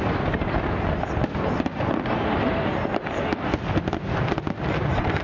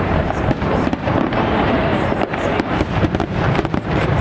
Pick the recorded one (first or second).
first